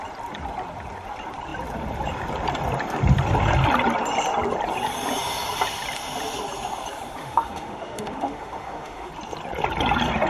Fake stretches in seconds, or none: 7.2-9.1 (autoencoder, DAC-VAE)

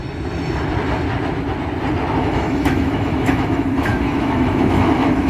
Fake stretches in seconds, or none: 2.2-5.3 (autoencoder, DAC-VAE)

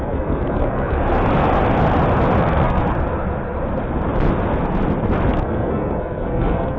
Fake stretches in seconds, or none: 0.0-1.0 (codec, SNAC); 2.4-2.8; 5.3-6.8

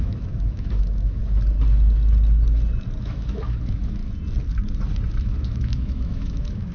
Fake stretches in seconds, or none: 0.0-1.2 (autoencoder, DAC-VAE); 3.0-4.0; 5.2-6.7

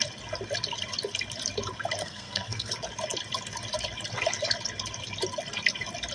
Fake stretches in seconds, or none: 2.0-2.7 (codec, SNAC)

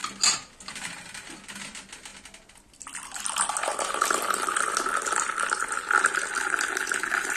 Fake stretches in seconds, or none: none

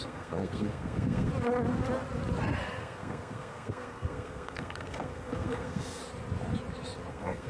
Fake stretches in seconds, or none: 0.0-1.3 (codec, SNAC); 2.8-6.0; 7.1-7.5

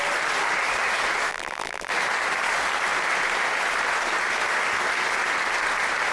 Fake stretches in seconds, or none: 1.3-1.9 (vocoder, BigVGAN v2)